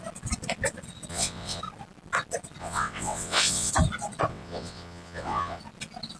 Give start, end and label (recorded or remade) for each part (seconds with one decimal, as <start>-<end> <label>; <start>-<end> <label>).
0.0-1.1 recorded; 1.1-1.6 remade; 1.6-2.6 recorded; 2.6-3.7 remade; 3.7-4.3 recorded; 4.3-5.6 remade; 5.6-6.2 recorded